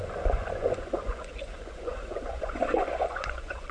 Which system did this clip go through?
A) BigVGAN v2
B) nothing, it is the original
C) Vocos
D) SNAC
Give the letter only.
C